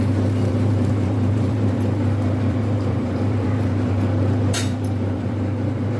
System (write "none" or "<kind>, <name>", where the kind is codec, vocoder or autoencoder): vocoder, BigVGAN v2